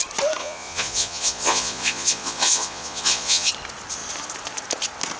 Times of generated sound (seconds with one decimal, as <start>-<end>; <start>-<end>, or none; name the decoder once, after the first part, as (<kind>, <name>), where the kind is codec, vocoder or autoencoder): 0.4-3.5 (vocoder, Vocos)

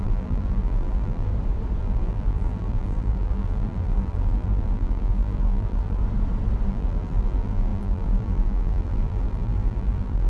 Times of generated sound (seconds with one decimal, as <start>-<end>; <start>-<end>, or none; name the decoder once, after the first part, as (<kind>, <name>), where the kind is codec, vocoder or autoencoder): 0.0-1.3 (vocoder, BigVGAN v2); 1.8-6.0; 6.7-10.3

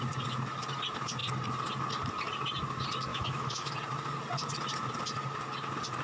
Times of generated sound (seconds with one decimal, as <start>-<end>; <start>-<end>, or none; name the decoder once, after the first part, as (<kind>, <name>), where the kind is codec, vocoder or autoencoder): 3.1-3.7 (autoencoder, DAC-VAE)

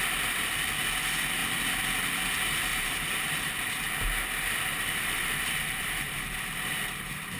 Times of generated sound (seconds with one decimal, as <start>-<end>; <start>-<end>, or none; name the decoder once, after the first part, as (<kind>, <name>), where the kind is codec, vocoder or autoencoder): 2.7-3.7 (vocoder, BigVGAN v2); 4.7-7.4